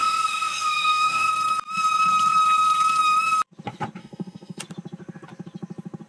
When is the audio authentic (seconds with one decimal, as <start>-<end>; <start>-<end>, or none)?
1.3-4.0; 4.6-6.1